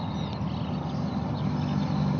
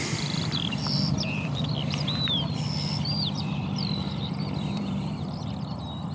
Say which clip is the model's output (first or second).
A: second